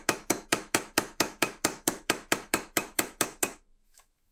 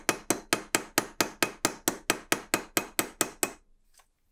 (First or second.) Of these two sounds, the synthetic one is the first